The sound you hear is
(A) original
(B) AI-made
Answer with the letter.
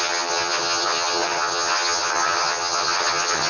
B